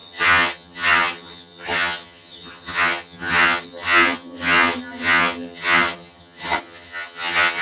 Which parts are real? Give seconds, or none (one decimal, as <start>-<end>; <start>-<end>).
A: none